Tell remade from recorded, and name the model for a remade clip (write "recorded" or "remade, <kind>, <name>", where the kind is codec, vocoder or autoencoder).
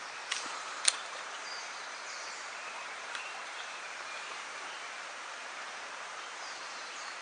remade, vocoder, BigVGAN v2